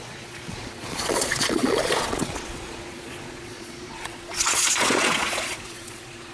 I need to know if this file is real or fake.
fake